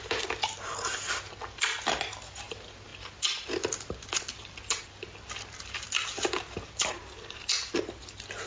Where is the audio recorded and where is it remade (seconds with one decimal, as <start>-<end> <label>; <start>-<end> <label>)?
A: 0.0-8.5 recorded